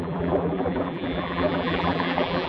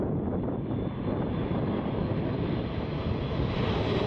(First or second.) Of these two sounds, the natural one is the second